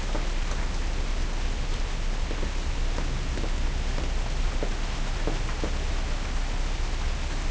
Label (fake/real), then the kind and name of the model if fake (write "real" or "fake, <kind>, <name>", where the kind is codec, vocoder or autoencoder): real